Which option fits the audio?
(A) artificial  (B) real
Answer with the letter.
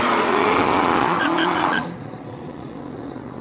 A